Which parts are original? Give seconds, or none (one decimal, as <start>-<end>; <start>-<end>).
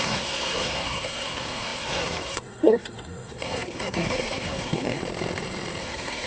5.0-5.8